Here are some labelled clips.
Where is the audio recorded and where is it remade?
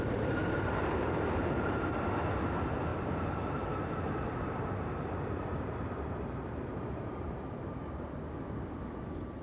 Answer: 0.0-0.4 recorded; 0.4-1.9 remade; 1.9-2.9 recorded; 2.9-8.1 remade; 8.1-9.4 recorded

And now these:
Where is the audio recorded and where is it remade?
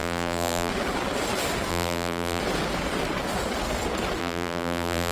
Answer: 0.0-0.7 remade; 0.7-1.7 recorded; 1.7-2.4 remade; 2.4-4.2 recorded; 4.2-5.1 remade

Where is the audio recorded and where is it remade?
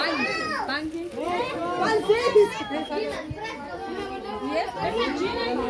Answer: 0.0-5.7 recorded